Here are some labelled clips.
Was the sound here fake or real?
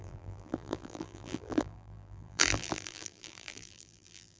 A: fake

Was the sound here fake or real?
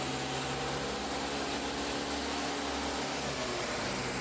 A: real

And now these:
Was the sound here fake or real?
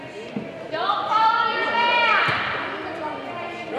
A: real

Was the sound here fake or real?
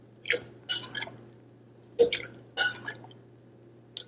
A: real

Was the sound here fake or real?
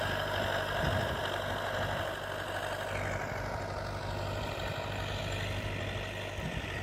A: real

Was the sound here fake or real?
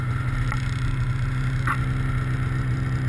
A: real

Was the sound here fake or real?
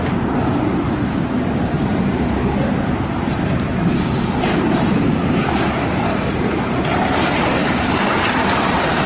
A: fake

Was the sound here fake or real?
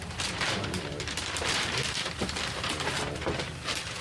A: fake